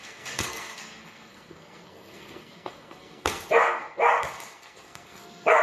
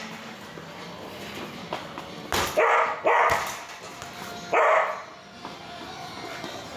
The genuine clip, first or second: second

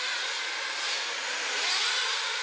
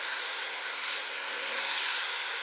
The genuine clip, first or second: first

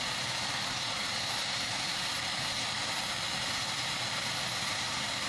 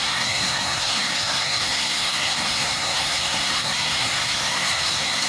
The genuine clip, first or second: first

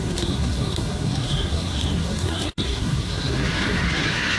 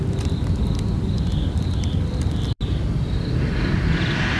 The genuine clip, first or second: second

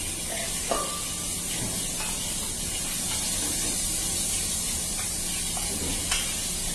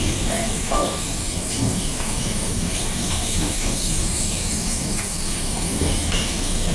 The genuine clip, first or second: first